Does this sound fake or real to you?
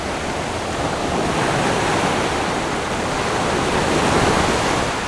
real